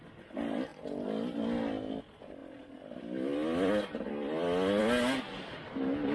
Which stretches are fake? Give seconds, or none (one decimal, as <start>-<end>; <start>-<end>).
none